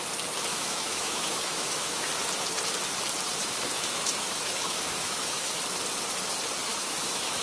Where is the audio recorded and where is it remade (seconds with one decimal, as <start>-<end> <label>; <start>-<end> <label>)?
0.0-0.5 recorded; 0.5-2.1 remade; 2.1-3.4 recorded; 3.4-5.6 remade; 5.6-6.7 recorded; 6.7-7.4 remade